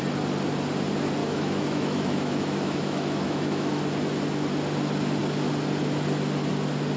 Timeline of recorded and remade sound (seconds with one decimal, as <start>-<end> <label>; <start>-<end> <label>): 0.0-1.2 recorded; 1.2-3.8 remade; 3.8-7.0 recorded